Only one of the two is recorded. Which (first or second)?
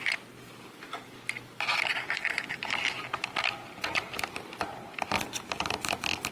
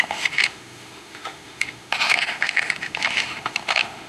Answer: first